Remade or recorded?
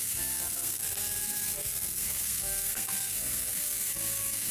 remade